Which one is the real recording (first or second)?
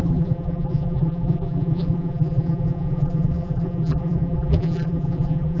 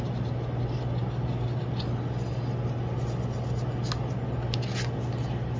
second